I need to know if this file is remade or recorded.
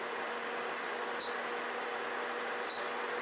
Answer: recorded